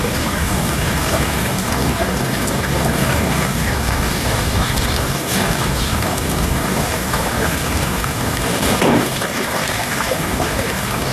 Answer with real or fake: fake